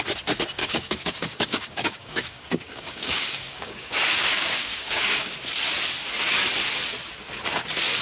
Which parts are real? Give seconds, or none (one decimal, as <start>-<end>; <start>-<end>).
0.0-0.6; 5.4-8.0